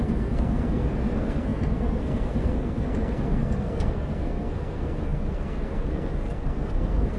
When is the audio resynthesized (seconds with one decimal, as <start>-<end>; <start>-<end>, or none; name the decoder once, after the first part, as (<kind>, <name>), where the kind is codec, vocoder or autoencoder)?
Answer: 0.0-7.2 (codec, SNAC)